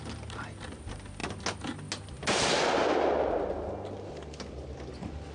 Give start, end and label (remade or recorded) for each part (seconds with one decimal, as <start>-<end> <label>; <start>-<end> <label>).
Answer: 0.0-5.3 recorded